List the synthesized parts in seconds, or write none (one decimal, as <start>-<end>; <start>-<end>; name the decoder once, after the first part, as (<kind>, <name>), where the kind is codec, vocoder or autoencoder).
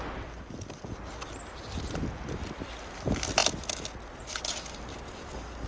none